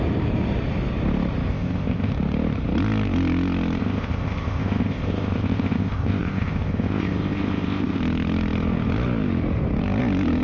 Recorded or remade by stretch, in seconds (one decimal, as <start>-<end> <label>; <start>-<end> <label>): 0.0-1.5 recorded; 1.5-2.1 remade; 2.1-3.8 recorded; 3.8-8.0 remade; 8.0-10.4 recorded